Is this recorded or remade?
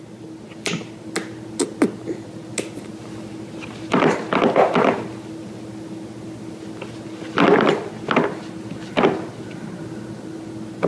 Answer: recorded